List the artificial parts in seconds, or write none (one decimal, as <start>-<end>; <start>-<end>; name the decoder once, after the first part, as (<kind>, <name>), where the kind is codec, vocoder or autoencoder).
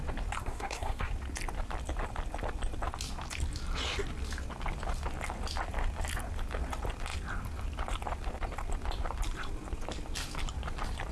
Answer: 0.4-1.1 (codec, SNAC)